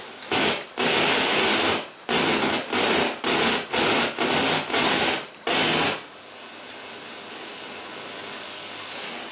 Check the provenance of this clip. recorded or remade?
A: recorded